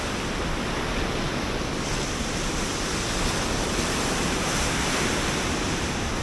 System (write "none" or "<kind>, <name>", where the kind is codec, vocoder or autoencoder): none